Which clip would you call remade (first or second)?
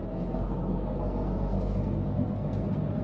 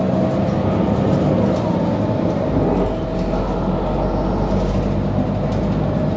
first